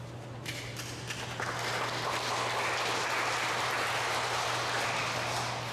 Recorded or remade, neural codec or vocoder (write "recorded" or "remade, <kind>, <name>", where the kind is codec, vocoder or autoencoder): recorded